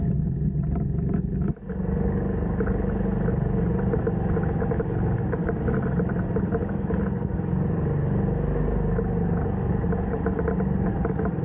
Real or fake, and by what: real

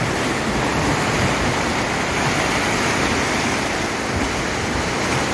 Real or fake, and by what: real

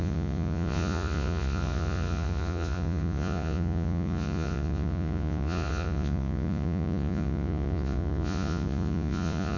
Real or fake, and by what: fake, vocoder, Vocos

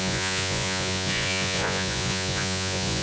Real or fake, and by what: fake, vocoder, Vocos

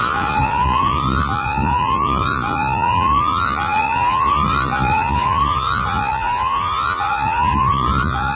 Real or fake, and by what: fake, vocoder, Vocos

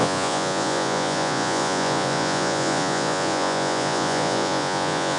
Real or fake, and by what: fake, vocoder, Vocos